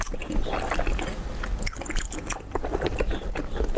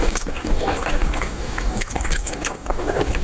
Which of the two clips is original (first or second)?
first